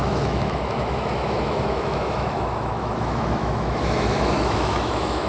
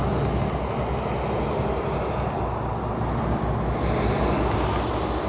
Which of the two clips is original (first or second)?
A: second